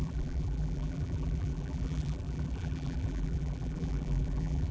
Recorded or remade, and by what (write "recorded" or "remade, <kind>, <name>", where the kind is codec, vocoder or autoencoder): remade, vocoder, BigVGAN v2